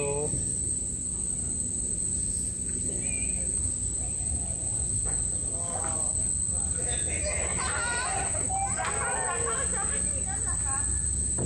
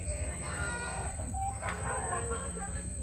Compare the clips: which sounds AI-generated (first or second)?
second